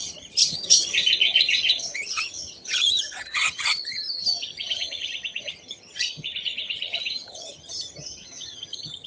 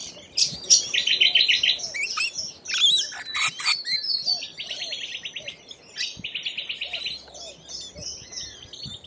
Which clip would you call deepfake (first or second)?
first